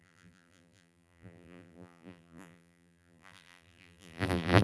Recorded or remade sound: remade